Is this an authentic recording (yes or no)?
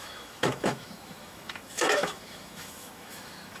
no